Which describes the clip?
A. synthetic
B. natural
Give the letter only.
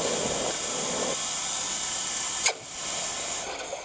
B